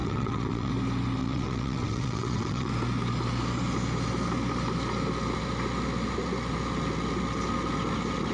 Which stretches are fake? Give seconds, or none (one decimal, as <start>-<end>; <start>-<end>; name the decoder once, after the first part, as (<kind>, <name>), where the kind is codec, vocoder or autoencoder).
0.0-0.7 (vocoder, WaveNeXt); 1.2-2.7